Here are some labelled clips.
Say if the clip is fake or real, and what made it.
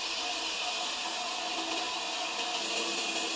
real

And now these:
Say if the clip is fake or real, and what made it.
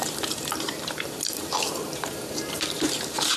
fake, vocoder, BigVGAN v2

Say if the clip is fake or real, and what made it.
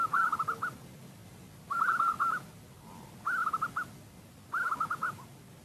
real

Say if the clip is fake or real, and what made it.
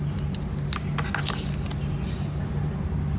real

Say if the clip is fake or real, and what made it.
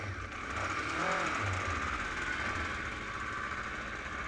real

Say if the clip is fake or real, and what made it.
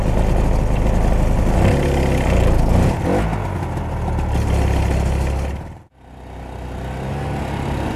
real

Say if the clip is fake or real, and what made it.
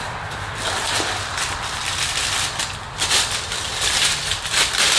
fake, vocoder, BigVGAN v2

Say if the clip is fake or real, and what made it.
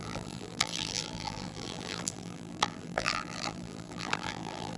fake, vocoder, BigVGAN v2